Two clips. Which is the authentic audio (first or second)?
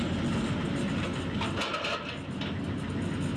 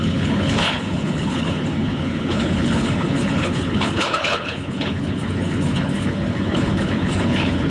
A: first